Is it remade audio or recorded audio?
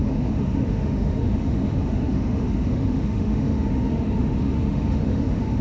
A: remade